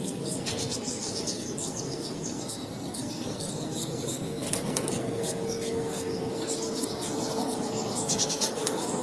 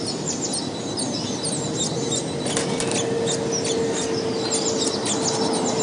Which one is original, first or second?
second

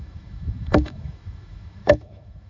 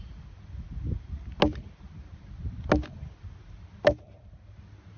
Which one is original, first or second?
second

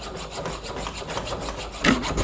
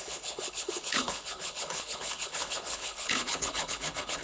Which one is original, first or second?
first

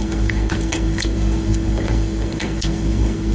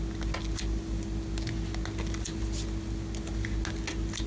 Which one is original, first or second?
second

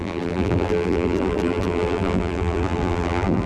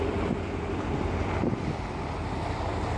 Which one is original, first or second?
second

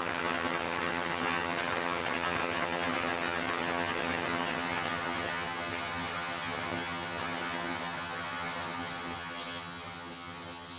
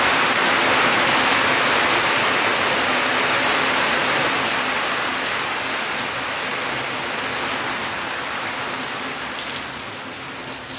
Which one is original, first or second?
second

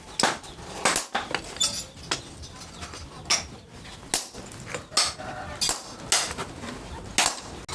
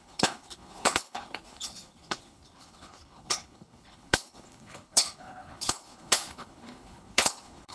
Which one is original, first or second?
first